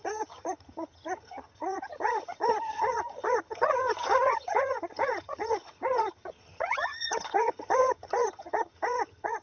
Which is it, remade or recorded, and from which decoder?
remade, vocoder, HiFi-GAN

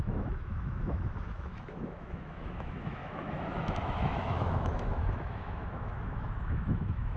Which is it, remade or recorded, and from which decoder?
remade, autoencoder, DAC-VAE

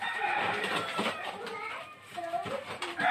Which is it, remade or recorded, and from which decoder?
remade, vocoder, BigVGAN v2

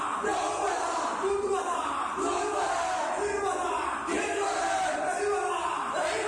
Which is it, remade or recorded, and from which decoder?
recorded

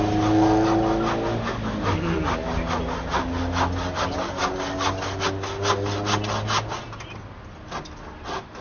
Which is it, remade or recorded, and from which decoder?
recorded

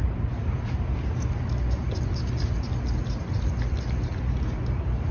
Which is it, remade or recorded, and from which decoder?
recorded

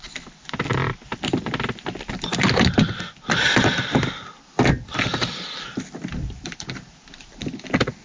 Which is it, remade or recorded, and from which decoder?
remade, vocoder, BigVGAN v2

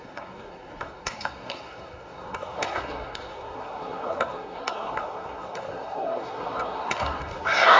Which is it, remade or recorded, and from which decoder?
remade, codec, SNAC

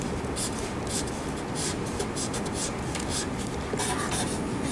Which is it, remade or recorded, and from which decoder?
recorded